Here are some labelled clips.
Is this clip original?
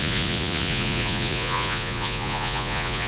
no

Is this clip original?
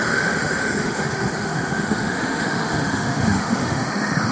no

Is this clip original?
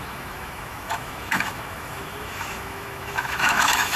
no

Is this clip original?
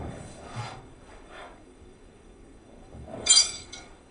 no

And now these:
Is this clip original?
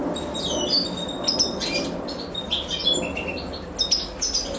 yes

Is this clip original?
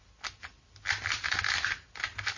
yes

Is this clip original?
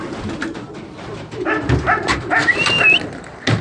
yes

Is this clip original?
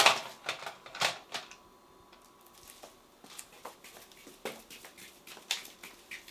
yes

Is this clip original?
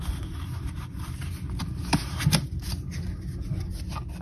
yes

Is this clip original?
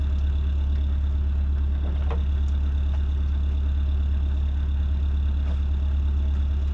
yes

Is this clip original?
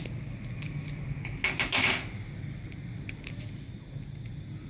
yes